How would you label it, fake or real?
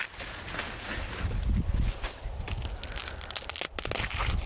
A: real